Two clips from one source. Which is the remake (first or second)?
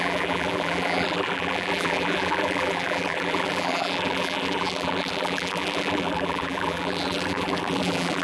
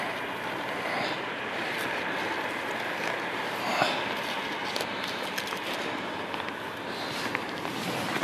first